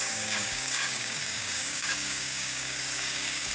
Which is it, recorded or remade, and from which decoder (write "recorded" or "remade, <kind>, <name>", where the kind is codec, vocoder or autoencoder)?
remade, codec, DAC